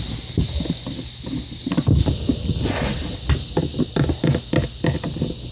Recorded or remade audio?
recorded